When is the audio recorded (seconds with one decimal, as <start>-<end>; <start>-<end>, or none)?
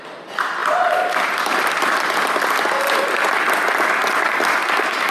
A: 0.0-5.1